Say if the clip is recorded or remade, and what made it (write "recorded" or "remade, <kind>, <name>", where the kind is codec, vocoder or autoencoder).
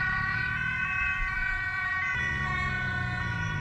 recorded